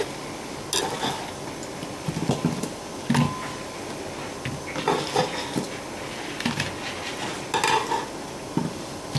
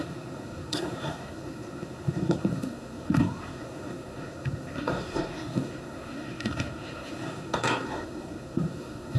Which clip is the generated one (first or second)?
second